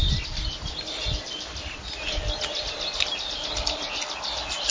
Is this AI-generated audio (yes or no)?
no